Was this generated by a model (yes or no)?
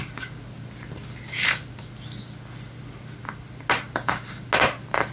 no